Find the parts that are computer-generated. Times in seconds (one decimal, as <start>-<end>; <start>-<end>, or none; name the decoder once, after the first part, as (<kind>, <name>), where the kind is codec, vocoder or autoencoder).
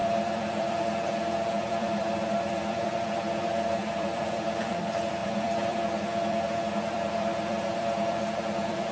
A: 0.0-8.9 (vocoder, BigVGAN v2)